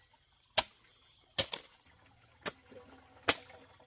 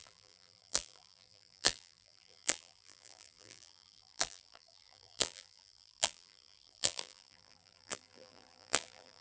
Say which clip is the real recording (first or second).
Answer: first